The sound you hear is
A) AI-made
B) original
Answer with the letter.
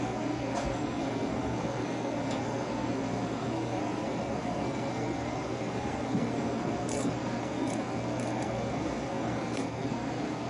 A